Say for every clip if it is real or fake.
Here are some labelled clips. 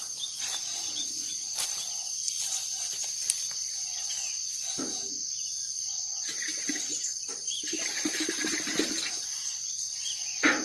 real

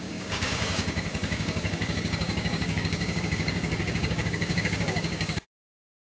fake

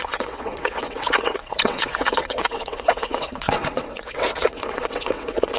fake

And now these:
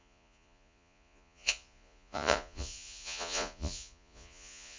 fake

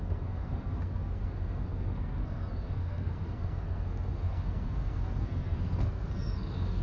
fake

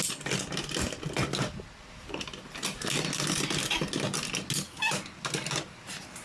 real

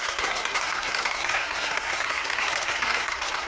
fake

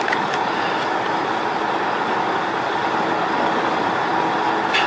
real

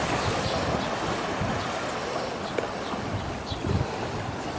real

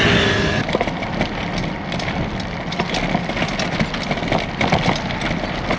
real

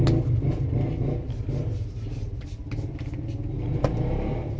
real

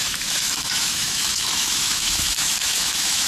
fake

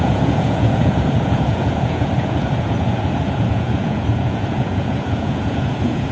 fake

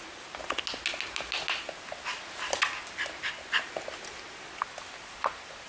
real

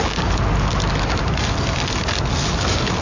real